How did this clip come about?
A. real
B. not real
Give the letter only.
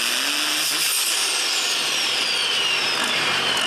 A